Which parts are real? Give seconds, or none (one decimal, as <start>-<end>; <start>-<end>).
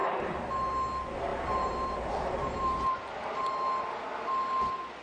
0.5-1.3; 3.5-5.0